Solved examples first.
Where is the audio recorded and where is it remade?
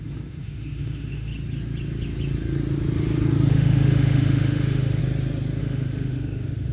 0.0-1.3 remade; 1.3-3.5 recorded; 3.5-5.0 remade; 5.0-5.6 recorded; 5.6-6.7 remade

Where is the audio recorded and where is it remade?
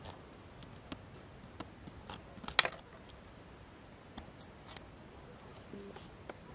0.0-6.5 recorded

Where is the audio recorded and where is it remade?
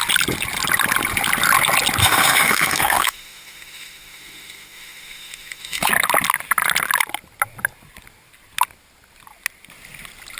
0.0-2.0 recorded; 2.0-5.9 remade; 5.9-10.4 recorded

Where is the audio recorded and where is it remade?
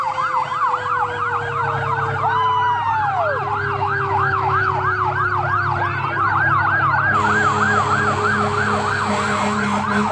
0.0-3.8 recorded; 3.8-4.7 remade; 4.7-10.1 recorded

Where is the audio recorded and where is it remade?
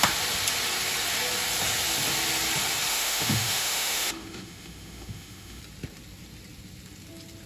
0.0-2.9 recorded; 2.9-5.6 remade; 5.6-7.5 recorded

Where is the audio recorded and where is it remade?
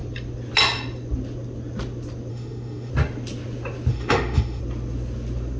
0.0-2.3 recorded; 2.3-2.9 remade; 2.9-3.9 recorded; 3.9-4.6 remade; 4.6-5.6 recorded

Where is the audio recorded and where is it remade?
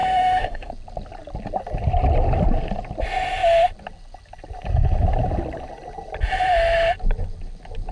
0.0-0.7 remade; 0.7-7.9 recorded